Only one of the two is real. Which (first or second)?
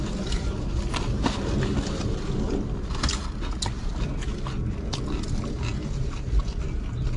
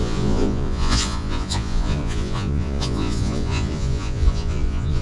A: first